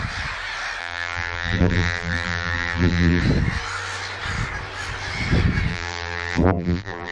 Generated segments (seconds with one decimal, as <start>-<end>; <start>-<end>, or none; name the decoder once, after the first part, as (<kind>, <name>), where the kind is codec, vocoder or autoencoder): 0.8-3.2 (vocoder, BigVGAN v2); 5.7-7.1